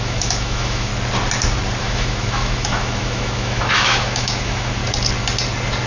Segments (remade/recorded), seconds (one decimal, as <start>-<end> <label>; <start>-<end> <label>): 0.0-0.9 remade; 0.9-1.8 recorded; 1.8-4.8 remade; 4.8-5.9 recorded